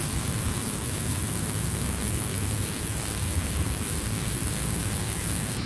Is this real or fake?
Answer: fake